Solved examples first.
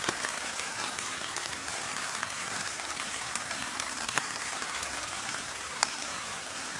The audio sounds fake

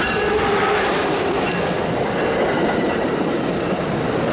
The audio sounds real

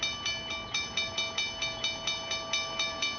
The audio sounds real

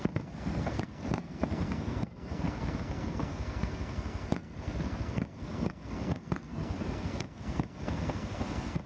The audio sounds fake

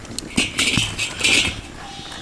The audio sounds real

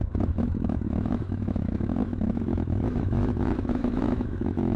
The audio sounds fake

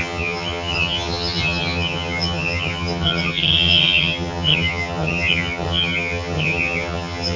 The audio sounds fake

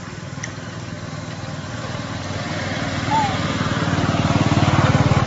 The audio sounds real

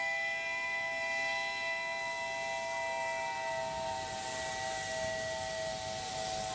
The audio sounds real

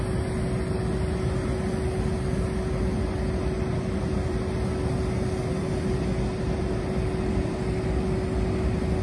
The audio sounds real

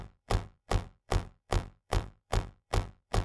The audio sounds fake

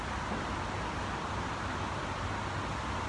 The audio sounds real